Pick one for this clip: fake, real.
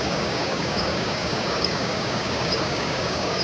fake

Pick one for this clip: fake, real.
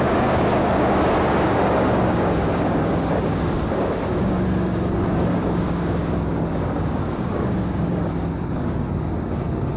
fake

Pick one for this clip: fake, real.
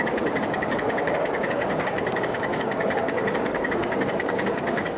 fake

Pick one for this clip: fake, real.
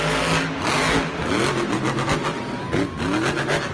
real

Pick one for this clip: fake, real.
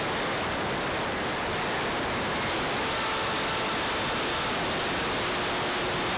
real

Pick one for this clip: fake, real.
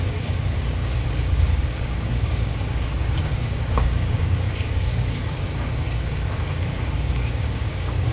fake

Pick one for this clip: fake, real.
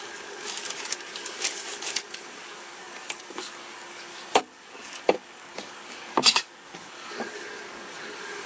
fake